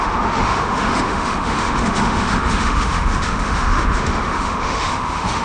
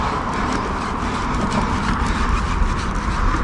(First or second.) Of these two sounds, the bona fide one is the second